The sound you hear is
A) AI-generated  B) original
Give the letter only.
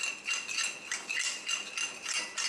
B